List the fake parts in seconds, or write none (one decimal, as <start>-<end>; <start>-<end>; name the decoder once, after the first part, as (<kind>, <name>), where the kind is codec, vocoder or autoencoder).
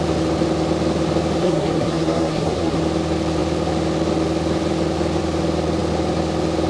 1.4-2.8 (codec, SNAC)